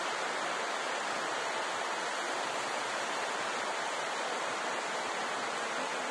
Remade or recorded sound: recorded